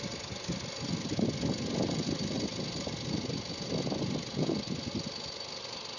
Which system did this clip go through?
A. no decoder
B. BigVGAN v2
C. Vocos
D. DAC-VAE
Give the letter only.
A